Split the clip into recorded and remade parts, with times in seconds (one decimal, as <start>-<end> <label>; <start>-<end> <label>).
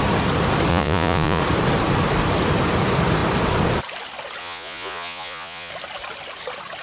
0.0-0.7 recorded; 0.7-1.4 remade; 1.4-4.4 recorded; 4.4-5.7 remade; 5.7-6.8 recorded